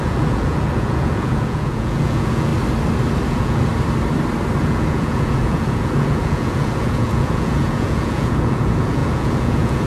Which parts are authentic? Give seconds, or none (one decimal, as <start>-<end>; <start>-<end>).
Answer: 2.5-3.3; 3.7-4.6